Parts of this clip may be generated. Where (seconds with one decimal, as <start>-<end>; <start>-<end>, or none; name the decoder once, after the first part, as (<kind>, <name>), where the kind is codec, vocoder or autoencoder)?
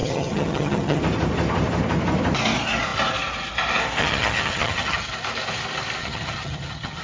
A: 0.0-1.0 (vocoder, HiFi-GAN); 4.0-5.1; 6.0-7.0